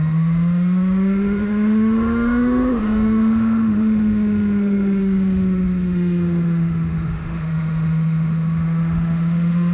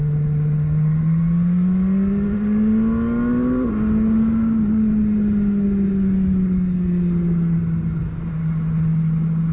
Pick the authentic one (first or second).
second